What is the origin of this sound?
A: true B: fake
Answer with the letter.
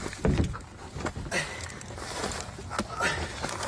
A